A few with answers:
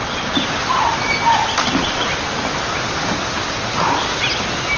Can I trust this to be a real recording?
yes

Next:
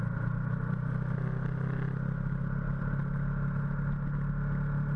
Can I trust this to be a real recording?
yes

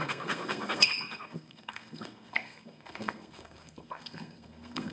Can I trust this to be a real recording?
no